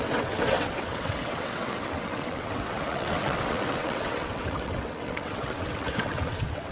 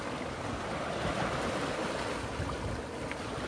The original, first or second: second